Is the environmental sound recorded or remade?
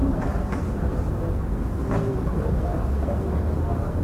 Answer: remade